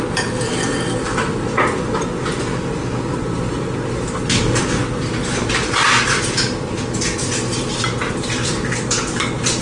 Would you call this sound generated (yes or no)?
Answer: no